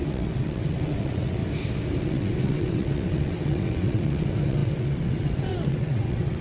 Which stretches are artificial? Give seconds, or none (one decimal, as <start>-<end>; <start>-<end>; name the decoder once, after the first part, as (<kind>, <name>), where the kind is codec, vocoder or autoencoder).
0.0-1.4 (vocoder, WaveNeXt); 2.0-6.4